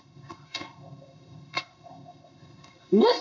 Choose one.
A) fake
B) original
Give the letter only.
A